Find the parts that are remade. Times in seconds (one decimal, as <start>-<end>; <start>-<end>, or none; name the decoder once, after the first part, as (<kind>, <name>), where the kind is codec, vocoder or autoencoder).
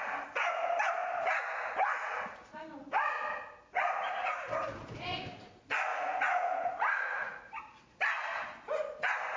5.9-8.0 (vocoder, Vocos)